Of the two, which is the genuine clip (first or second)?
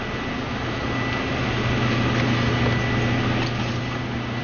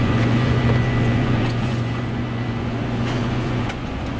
first